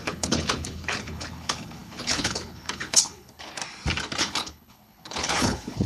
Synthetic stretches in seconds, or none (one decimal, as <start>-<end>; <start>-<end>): 0.0-3.6; 4.2-5.9

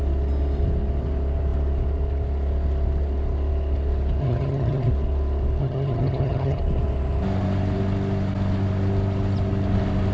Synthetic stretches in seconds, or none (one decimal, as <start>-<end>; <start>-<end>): 4.2-4.9; 5.6-6.6